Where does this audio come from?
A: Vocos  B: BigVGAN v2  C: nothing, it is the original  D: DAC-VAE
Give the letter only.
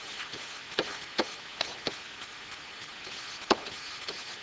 C